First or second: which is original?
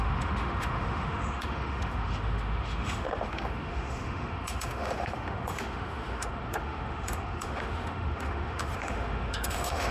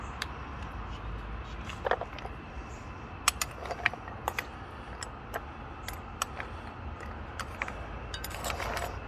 second